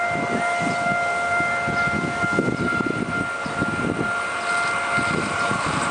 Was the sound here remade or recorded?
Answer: recorded